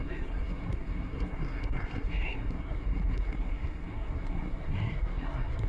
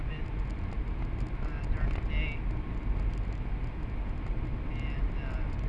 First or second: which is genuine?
second